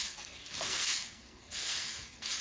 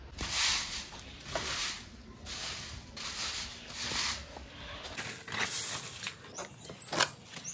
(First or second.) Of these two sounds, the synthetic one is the first